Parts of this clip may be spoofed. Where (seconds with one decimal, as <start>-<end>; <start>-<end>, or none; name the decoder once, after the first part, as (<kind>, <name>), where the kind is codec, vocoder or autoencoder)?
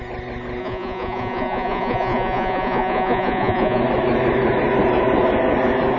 0.6-3.8 (vocoder, Vocos)